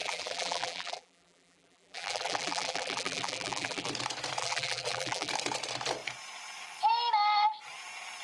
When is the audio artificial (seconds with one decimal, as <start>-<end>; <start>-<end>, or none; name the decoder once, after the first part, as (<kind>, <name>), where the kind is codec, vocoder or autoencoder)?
0.0-3.9 (vocoder, BigVGAN v2); 4.4-5.3